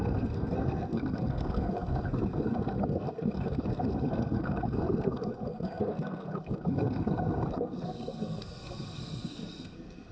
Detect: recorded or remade remade